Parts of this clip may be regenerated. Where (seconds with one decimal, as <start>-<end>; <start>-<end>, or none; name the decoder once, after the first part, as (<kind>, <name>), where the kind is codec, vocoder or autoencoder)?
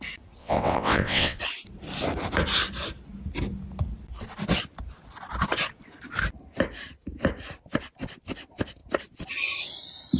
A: 0.4-1.4 (vocoder, WaveNeXt)